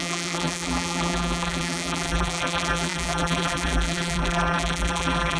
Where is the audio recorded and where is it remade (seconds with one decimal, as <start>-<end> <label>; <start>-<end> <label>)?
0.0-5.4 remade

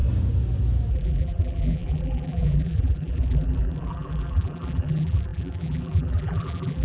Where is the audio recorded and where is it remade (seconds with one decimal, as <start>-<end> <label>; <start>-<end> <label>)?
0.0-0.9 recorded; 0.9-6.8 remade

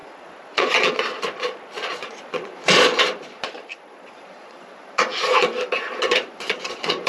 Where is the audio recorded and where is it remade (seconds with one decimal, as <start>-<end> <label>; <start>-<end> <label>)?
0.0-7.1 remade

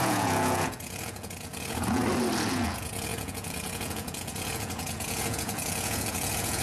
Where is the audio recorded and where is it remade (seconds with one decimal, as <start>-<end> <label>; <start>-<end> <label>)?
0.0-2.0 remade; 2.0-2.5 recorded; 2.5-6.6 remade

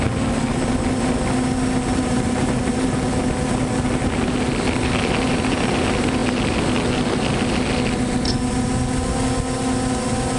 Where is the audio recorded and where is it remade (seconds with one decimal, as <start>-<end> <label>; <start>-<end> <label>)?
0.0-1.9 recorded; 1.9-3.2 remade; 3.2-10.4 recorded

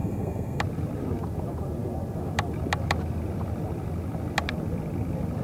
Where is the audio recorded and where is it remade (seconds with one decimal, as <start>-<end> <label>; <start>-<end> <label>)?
0.0-0.6 remade; 0.6-5.4 recorded

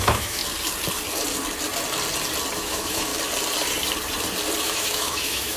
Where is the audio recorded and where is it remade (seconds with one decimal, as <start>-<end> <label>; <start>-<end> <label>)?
0.0-0.4 remade; 0.4-2.6 recorded; 2.6-3.1 remade; 3.1-4.6 recorded; 4.6-5.6 remade

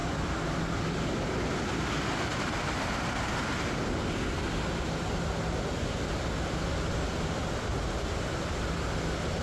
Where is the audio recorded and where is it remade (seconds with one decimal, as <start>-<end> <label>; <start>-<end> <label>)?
0.0-9.4 recorded